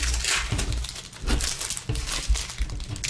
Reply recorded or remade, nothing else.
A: recorded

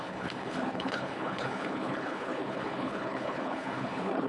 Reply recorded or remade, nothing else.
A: remade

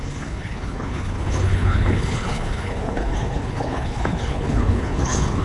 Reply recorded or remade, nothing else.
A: remade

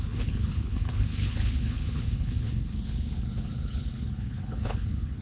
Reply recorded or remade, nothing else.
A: remade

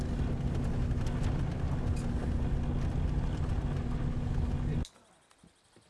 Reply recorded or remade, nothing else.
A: recorded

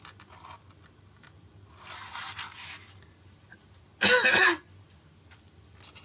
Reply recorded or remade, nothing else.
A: recorded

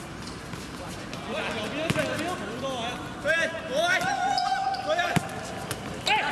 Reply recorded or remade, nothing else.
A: recorded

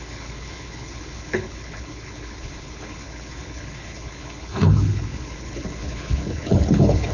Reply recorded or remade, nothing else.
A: remade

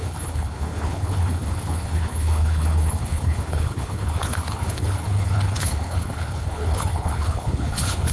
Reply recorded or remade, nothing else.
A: remade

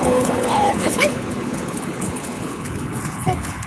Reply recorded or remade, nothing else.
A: remade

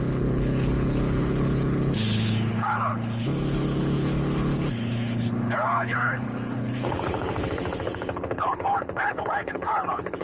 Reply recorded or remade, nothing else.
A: remade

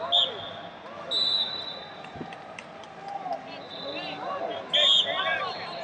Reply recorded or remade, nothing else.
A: recorded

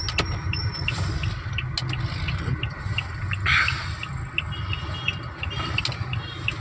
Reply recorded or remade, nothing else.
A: recorded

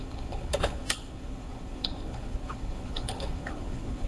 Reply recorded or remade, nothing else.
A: remade